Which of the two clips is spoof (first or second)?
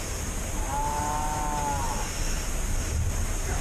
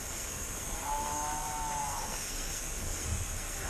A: second